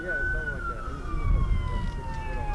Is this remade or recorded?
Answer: recorded